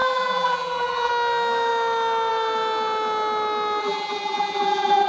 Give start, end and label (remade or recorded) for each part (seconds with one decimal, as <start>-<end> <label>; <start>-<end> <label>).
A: 0.0-1.1 remade; 1.1-3.8 recorded; 3.8-5.1 remade